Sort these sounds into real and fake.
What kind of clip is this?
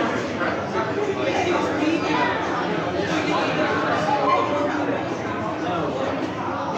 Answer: real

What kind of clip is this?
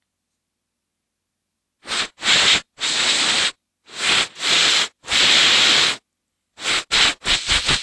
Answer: real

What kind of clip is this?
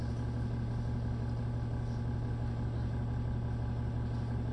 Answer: real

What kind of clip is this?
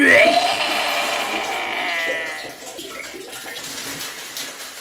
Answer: real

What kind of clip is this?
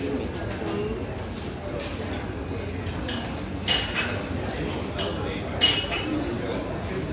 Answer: real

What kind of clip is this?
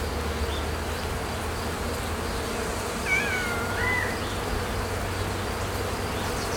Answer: real